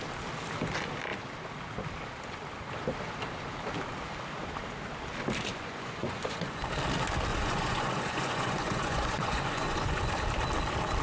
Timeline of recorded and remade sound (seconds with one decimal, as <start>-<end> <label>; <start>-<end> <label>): 0.0-5.5 recorded; 5.5-6.6 remade; 6.6-7.3 recorded; 7.3-10.1 remade; 10.1-11.0 recorded